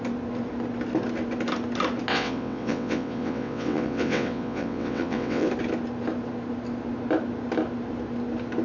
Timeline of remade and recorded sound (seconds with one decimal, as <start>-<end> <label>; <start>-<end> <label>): 0.0-2.1 recorded; 2.1-5.5 remade; 5.5-8.6 recorded